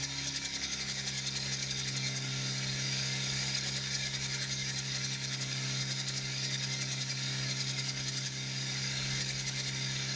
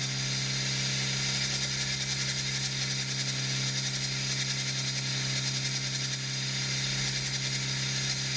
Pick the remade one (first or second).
first